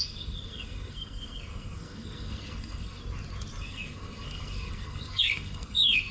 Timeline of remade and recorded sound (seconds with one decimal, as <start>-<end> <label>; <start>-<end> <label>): 0.0-3.0 remade; 3.0-3.6 recorded; 3.6-6.1 remade